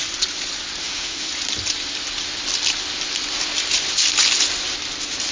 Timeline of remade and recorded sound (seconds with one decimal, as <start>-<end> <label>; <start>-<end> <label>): 0.0-0.8 recorded; 0.8-1.3 remade; 1.3-5.3 recorded